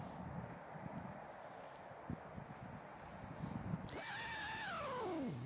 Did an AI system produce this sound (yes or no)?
no